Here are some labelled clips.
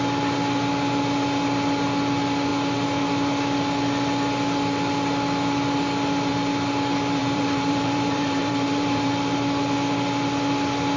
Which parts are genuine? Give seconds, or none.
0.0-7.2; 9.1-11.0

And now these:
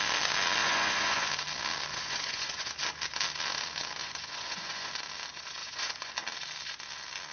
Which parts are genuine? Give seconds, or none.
0.0-0.6; 1.3-1.9; 2.7-4.0; 4.9-5.6; 6.1-7.3